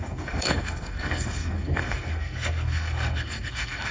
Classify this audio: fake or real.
fake